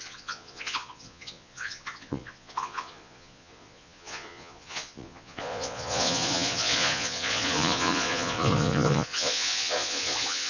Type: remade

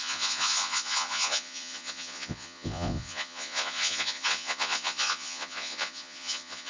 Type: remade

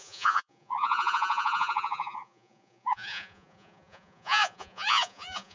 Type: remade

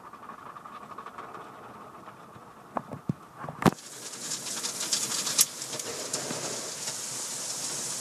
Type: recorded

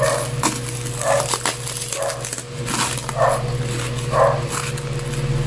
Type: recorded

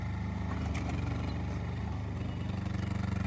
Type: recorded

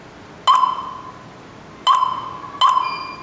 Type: recorded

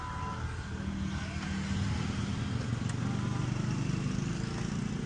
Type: recorded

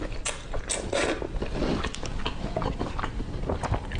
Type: recorded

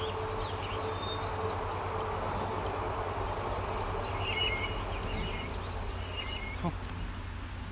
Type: recorded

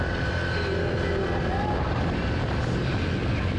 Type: recorded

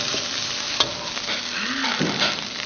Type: recorded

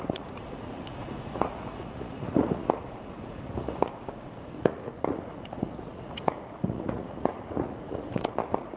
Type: remade